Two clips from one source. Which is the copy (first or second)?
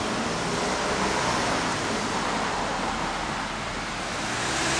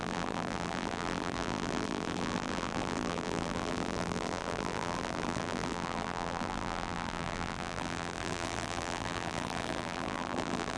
second